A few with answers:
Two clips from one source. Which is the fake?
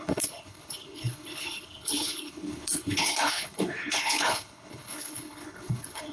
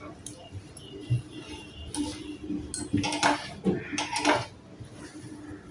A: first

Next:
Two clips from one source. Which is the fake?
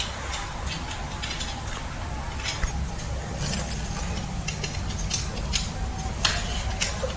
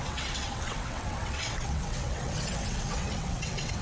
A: second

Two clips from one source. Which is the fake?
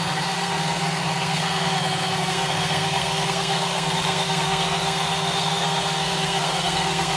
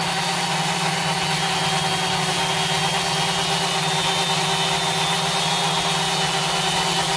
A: first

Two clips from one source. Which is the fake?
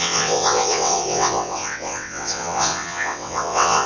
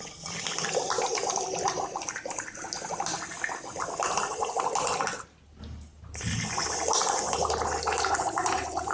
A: first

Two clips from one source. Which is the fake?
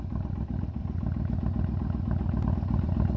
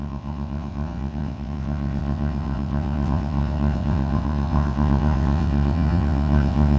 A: second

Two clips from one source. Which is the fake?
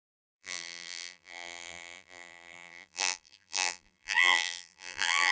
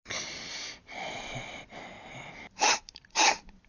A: first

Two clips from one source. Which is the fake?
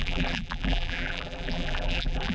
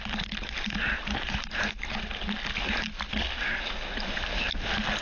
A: first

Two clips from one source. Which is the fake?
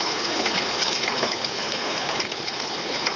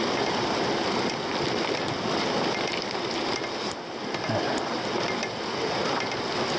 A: first